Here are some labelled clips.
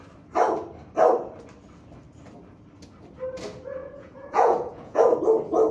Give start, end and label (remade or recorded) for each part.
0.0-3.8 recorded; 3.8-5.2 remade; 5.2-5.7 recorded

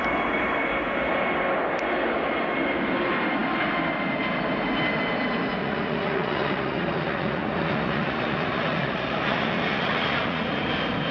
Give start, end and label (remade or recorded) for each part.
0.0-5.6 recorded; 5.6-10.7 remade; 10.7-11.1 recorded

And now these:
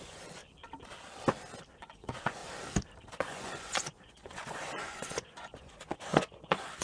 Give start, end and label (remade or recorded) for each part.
0.0-0.4 remade; 0.4-1.8 recorded; 1.8-2.4 remade; 2.4-3.1 recorded; 3.1-6.8 remade